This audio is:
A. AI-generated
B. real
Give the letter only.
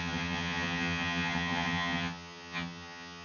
A